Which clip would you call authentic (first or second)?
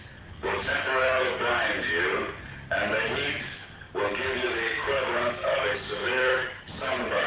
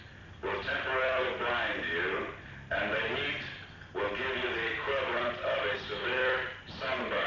second